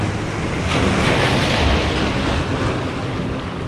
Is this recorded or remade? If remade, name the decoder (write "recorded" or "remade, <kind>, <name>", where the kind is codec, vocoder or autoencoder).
recorded